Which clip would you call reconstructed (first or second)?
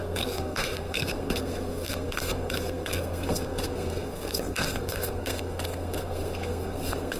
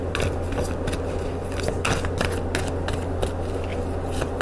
first